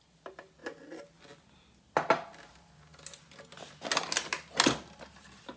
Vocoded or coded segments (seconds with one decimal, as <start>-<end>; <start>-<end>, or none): none